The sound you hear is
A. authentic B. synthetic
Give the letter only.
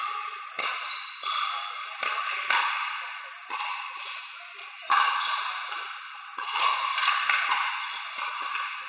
A